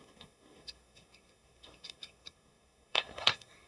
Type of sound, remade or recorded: remade